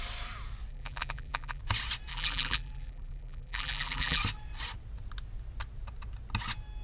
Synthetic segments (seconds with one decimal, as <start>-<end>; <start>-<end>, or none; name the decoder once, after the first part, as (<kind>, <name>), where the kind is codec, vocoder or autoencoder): 0.7-1.6 (vocoder, BigVGAN v2); 2.1-4.2